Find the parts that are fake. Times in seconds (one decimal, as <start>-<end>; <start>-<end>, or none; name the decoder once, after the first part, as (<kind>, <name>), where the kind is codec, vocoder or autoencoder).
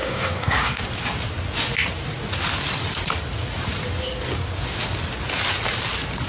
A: 0.0-0.8 (codec, SNAC)